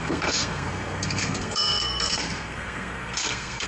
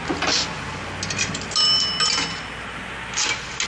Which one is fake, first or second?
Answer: first